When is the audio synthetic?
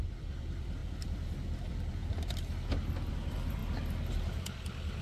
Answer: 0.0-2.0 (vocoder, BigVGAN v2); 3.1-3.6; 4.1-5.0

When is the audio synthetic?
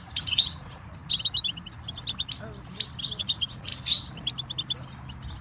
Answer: 0.0-1.0 (vocoder, Vocos); 3.2-3.7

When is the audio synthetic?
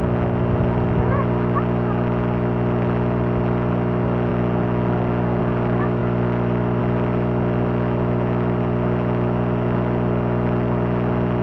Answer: 6.0-6.8 (vocoder, BigVGAN v2)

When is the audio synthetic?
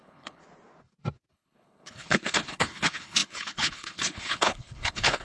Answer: 0.0-0.4 (codec, HILCodec); 1.3-5.2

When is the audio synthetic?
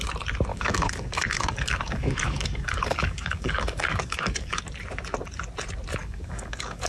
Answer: 0.5-4.6 (codec, DAC); 6.0-6.9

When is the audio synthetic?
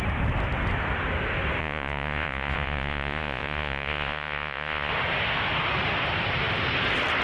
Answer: 1.6-4.9 (vocoder, Vocos)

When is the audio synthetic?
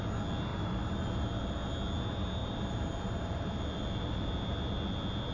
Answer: 0.5-1.7 (vocoder, BigVGAN v2); 2.4-4.3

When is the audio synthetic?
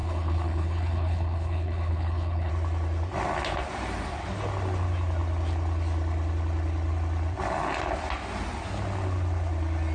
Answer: 0.0-2.5 (codec, HILCodec)